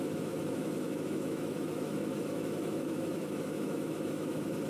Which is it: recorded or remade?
remade